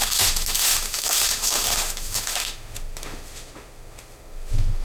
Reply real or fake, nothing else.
fake